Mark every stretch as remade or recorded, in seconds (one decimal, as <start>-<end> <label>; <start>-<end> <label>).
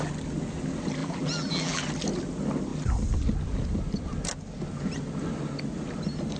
0.0-1.0 recorded; 1.0-1.8 remade; 1.8-6.4 recorded